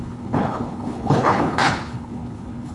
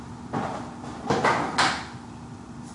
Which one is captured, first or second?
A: second